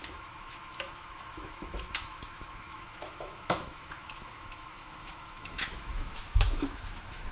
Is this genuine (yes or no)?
no